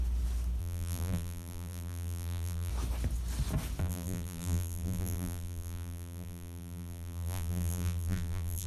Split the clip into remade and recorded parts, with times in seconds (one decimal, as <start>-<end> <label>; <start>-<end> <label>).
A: 0.0-0.6 recorded; 0.6-2.7 remade; 2.7-3.8 recorded; 3.8-8.7 remade